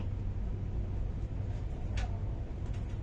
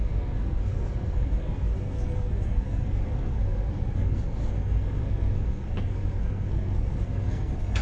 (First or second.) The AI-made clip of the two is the second